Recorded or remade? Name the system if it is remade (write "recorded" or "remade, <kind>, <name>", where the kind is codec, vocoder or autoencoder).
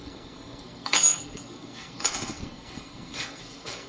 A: remade, codec, SNAC